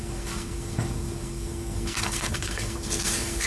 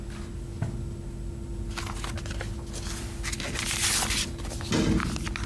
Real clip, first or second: second